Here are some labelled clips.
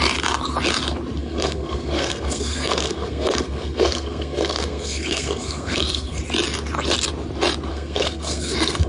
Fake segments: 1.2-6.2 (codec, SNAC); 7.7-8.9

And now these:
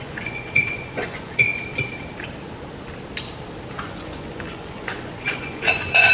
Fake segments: 0.0-1.5 (vocoder, Vocos); 3.8-6.1

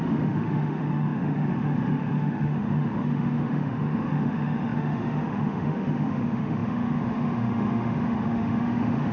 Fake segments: 0.0-9.1 (autoencoder, DAC-VAE)

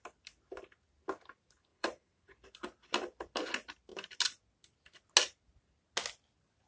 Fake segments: 1.7-2.3 (vocoder, Vocos)

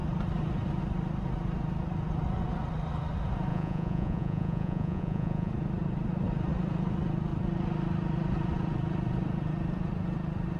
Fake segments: 3.5-5.5 (vocoder, Vocos)